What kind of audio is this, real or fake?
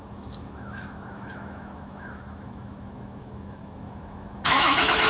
fake